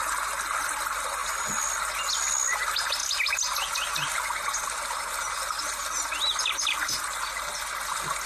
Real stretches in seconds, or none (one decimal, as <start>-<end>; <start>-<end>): 0.0-8.3